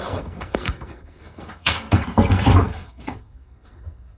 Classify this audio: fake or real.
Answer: fake